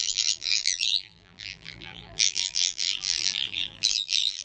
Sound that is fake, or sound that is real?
fake